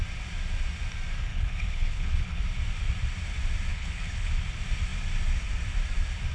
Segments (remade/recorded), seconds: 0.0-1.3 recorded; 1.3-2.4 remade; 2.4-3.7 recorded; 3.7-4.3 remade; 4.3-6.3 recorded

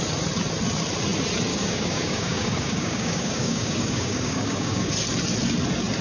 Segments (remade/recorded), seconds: 0.0-1.5 recorded; 1.5-4.9 remade; 4.9-6.0 recorded

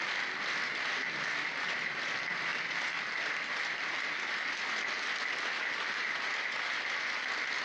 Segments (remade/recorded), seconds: 0.0-7.6 recorded

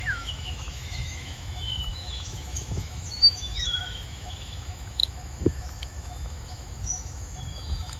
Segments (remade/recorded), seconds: 0.0-8.0 remade

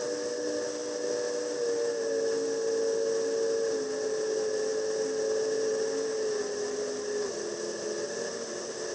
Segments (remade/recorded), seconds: 0.0-8.9 recorded